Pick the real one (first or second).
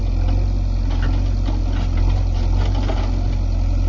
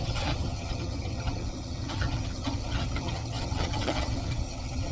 first